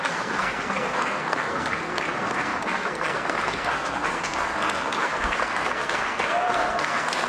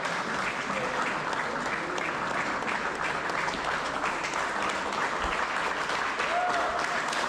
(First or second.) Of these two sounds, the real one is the second